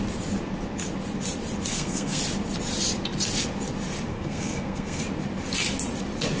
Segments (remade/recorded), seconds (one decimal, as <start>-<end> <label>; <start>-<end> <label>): 0.0-1.7 recorded; 1.7-2.2 remade; 2.2-4.1 recorded; 4.1-5.0 remade; 5.0-6.4 recorded